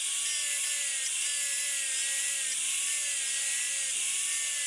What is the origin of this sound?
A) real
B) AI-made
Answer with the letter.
A